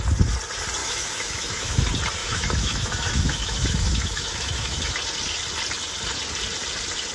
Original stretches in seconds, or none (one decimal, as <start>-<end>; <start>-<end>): 0.0-0.8; 1.8-2.2; 4.9-7.1